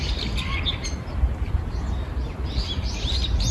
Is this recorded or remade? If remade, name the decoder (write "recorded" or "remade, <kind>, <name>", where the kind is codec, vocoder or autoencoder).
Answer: recorded